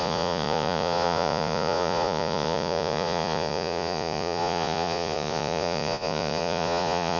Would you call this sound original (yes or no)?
no